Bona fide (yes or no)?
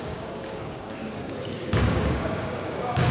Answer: no